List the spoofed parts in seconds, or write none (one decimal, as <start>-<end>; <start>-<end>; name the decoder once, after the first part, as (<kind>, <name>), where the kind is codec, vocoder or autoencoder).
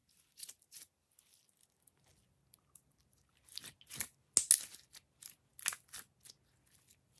0.0-3.7 (vocoder, BigVGAN v2)